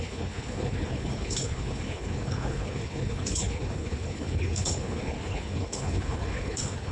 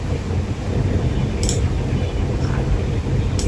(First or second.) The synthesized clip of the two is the first